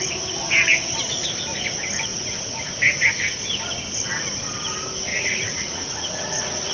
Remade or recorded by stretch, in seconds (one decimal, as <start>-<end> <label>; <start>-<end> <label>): 0.0-2.1 recorded; 2.1-2.8 remade; 2.8-5.1 recorded; 5.1-6.7 remade